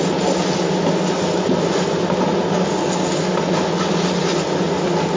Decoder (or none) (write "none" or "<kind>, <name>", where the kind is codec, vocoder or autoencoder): none